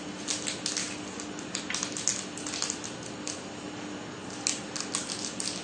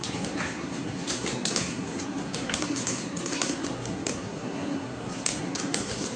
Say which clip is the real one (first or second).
first